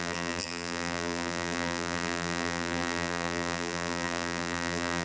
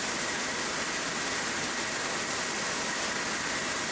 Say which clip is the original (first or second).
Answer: second